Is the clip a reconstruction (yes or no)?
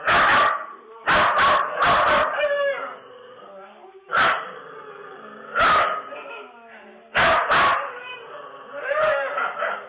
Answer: no